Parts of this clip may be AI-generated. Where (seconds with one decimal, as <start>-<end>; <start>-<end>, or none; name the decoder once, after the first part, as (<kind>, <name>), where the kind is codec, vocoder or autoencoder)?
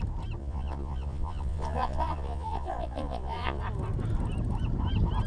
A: 0.4-3.6 (vocoder, Vocos)